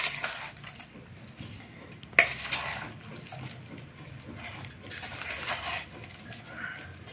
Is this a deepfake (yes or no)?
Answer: no